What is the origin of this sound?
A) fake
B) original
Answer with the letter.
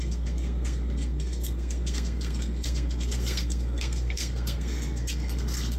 A